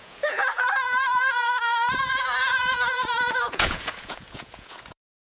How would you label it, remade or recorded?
remade